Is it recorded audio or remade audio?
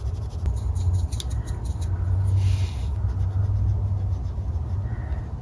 recorded